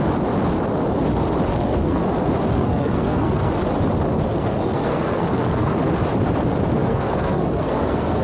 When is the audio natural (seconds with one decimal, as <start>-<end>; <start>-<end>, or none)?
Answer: 0.0-1.5; 2.0-2.5; 3.5-4.3; 5.8-6.8